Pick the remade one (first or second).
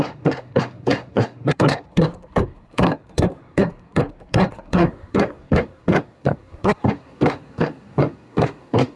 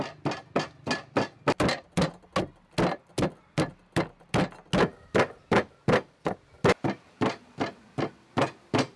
first